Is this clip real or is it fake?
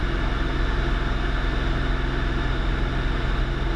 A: real